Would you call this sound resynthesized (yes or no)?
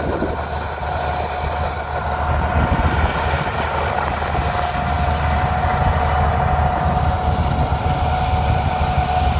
no